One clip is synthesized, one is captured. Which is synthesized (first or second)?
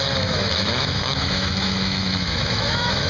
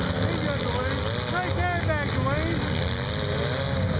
first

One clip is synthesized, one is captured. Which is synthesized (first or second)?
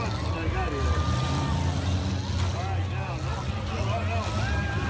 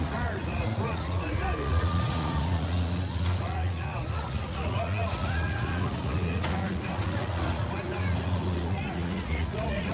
second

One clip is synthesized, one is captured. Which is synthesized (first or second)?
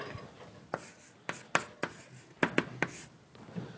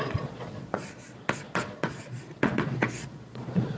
second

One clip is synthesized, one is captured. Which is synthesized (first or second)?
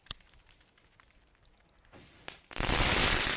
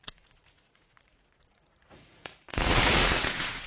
second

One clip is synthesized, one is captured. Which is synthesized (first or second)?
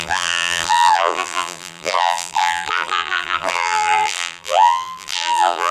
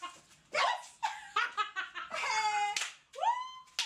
first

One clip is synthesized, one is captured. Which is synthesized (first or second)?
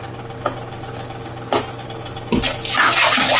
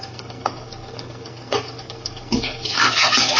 second